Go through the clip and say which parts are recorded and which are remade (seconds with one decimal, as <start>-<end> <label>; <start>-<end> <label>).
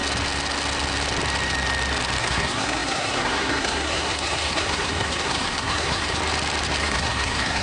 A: 0.0-2.2 recorded; 2.2-6.2 remade; 6.2-6.8 recorded; 6.8-7.6 remade